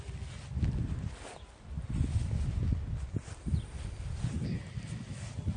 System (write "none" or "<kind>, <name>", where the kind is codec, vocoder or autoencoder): none